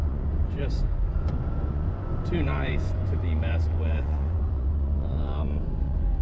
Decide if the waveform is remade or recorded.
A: remade